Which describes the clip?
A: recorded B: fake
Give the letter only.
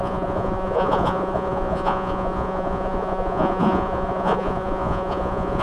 B